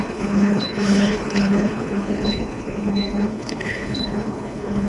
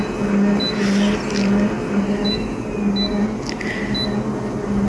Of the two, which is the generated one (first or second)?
first